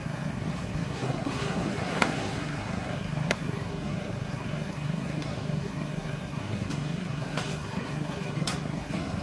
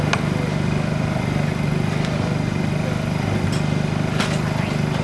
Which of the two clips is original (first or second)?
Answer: second